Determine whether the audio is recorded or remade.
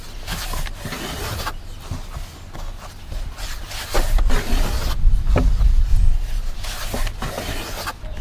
recorded